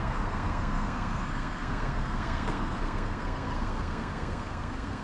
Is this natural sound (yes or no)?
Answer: no